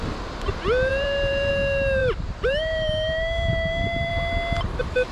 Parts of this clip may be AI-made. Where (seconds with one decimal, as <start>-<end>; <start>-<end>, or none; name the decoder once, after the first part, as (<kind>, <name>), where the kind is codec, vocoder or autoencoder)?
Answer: 0.9-1.5 (vocoder, BigVGAN v2); 2.0-4.1